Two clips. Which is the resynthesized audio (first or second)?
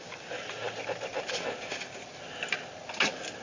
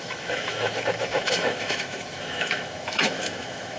second